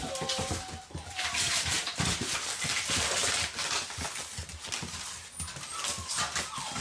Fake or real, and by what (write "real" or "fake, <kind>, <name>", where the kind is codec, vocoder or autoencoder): real